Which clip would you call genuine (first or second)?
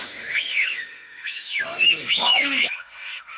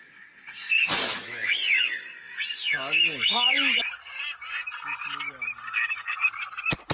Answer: second